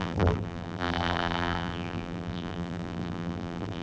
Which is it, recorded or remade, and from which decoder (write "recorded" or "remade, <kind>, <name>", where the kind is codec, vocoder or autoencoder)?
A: remade, vocoder, BigVGAN v2